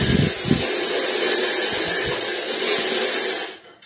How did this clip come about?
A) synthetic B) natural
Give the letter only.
B